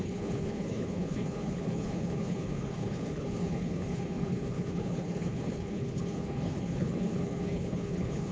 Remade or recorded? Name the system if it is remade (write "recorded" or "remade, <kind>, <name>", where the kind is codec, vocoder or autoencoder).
remade, codec, HILCodec